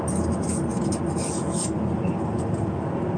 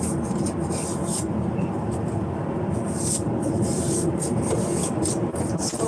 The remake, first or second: second